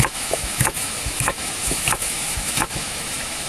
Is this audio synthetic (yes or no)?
yes